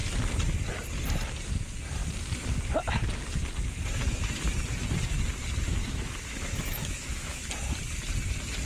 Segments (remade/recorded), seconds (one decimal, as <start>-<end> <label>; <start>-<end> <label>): 0.0-5.8 recorded; 5.8-7.5 remade; 7.5-8.7 recorded